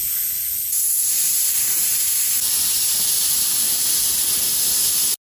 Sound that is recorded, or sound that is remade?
recorded